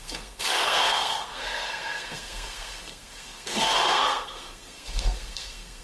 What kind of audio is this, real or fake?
fake